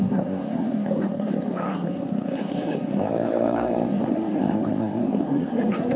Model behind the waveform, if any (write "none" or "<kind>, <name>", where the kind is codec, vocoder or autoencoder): codec, SNAC